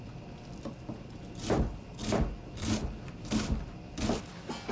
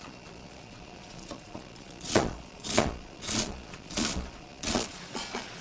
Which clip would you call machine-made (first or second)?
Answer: second